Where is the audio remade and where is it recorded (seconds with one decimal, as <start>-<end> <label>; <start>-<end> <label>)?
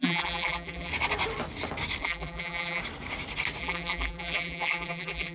0.0-0.9 remade; 0.9-2.0 recorded; 2.0-2.8 remade; 2.8-3.6 recorded; 3.6-5.3 remade